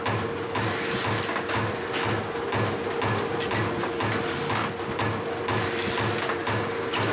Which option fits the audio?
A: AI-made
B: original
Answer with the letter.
B